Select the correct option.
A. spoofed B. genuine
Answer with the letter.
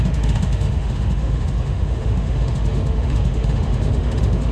A